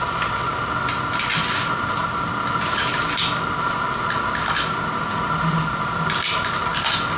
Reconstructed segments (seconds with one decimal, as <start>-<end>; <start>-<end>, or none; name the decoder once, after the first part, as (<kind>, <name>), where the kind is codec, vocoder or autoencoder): none